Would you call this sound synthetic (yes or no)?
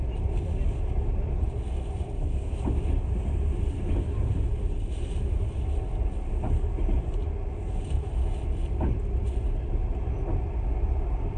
no